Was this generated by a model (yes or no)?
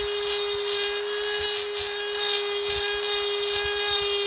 no